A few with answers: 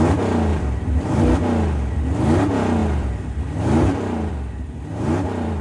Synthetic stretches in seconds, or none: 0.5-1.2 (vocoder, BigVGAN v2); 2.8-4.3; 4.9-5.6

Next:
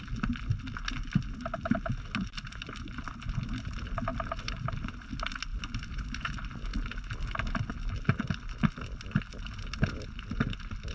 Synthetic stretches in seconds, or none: 4.1-5.1 (vocoder, BigVGAN v2); 5.5-6.3

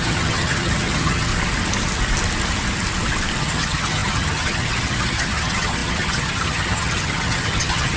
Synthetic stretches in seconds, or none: 0.0-1.3 (vocoder, HiFi-GAN); 3.4-8.0

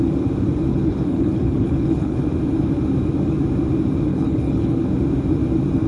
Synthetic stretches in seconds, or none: 0.7-2.2 (codec, HILCodec); 4.1-4.8

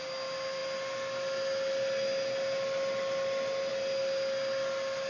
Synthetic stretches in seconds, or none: none